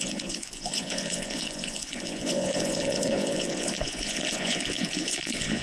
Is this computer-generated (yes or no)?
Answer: yes